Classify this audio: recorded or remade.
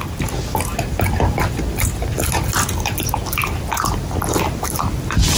recorded